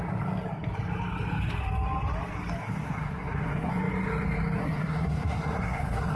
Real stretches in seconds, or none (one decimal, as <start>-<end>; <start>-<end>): 0.0-2.6; 3.7-4.6